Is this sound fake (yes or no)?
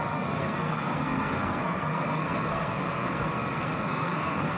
yes